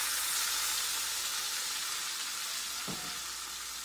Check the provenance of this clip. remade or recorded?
recorded